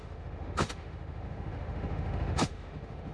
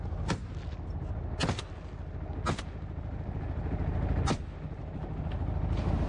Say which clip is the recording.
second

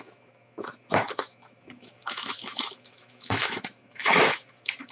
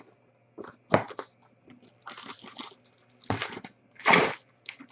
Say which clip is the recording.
second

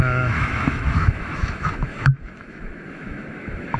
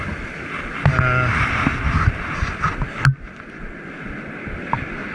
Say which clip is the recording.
second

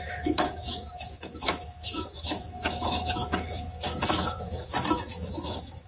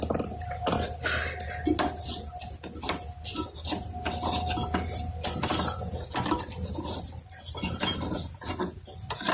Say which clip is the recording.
second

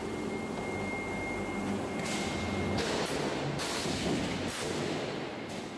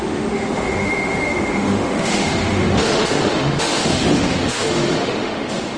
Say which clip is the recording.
first